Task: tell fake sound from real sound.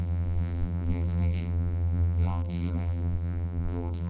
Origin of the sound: fake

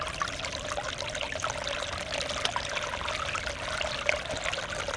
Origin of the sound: real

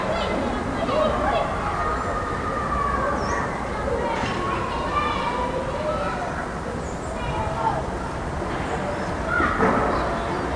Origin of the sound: real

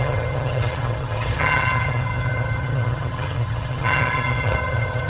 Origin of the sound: fake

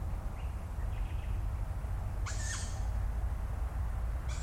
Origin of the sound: real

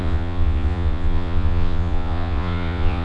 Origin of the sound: fake